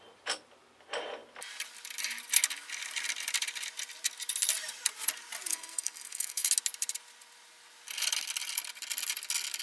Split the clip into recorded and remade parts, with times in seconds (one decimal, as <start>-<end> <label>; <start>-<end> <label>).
0.0-5.5 recorded; 5.5-6.5 remade; 6.5-9.6 recorded